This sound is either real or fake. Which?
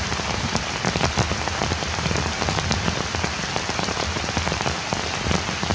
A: real